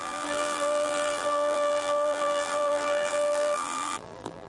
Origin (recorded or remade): remade